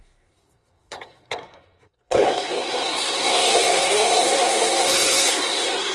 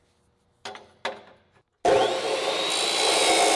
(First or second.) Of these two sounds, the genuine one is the second